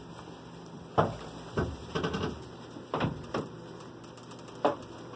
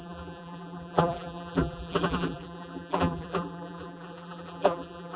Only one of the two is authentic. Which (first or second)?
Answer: first